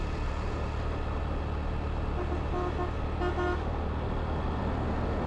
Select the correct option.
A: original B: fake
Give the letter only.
A